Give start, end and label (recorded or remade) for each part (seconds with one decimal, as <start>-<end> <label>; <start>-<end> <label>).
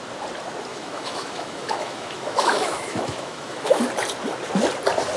0.0-0.7 recorded; 0.7-3.8 remade; 3.8-5.2 recorded